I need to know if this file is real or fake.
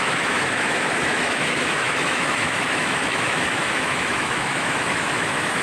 fake